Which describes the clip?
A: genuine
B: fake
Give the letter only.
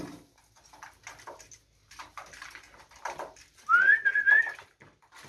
A